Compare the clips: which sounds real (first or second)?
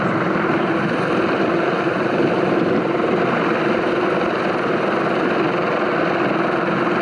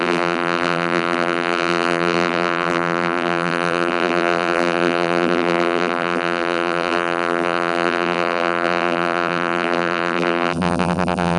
first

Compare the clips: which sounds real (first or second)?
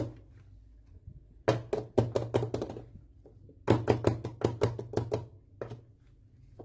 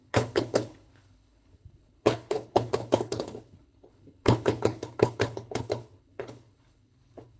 first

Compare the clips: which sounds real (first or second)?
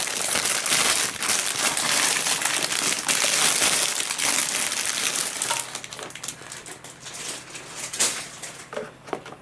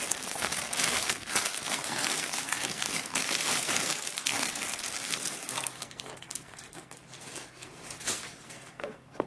first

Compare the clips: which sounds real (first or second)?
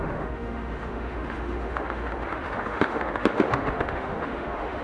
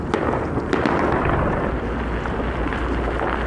second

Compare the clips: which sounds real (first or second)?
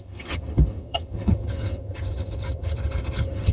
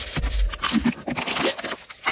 second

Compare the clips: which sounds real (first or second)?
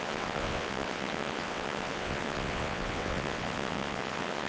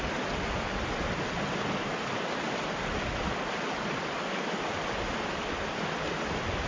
second